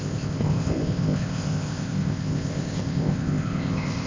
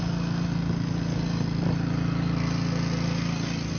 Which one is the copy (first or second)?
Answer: first